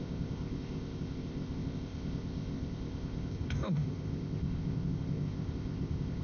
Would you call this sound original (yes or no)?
no